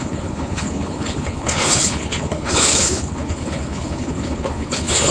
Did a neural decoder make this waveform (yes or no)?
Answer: yes